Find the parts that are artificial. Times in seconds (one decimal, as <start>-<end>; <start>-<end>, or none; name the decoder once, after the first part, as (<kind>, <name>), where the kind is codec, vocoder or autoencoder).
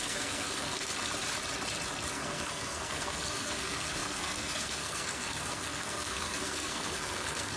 0.0-0.9 (codec, SNAC); 2.1-7.6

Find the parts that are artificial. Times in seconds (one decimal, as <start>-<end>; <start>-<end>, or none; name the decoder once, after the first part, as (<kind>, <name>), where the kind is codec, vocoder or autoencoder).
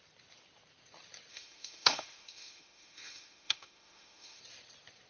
1.3-4.4 (autoencoder, DAC-VAE)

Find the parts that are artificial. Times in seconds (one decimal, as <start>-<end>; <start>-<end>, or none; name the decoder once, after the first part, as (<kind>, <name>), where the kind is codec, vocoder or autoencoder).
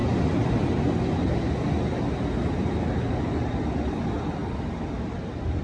none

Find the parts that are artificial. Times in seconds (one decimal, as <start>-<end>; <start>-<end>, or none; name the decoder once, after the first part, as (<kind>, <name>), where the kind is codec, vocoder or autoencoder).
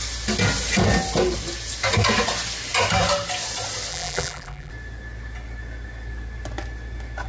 3.9-4.7 (vocoder, BigVGAN v2)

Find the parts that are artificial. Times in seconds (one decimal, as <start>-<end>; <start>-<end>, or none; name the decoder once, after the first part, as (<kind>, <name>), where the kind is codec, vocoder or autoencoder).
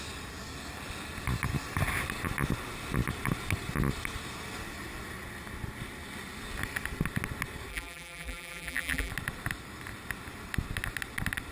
7.7-9.1 (vocoder, BigVGAN v2)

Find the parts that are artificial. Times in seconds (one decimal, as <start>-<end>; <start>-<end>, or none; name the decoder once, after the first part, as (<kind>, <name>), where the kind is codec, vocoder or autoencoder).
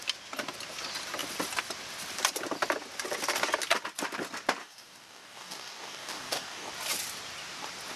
4.6-6.7 (codec, DAC)